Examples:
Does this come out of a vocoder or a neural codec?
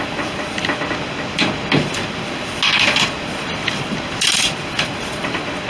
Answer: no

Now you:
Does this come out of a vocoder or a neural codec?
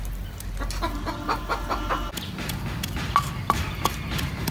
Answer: no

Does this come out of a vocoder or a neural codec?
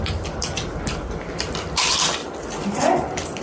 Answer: yes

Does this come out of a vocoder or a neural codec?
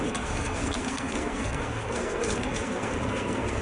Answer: yes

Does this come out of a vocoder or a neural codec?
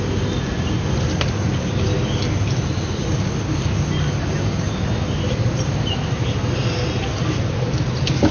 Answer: no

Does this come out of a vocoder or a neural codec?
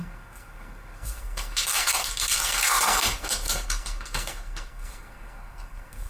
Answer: yes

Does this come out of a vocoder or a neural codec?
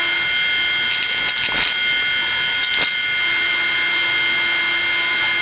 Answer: no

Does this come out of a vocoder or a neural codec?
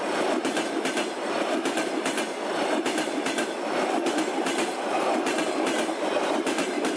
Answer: yes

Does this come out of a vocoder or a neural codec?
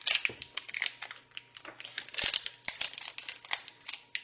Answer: no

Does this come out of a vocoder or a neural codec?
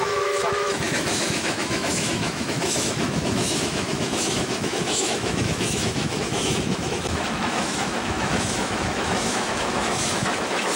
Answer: yes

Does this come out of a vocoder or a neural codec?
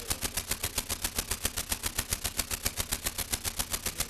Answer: no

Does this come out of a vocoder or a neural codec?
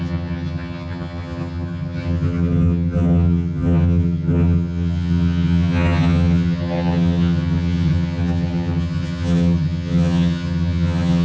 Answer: yes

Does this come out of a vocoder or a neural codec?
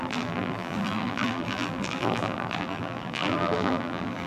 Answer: yes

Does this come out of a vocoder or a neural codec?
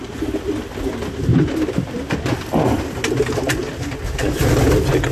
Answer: no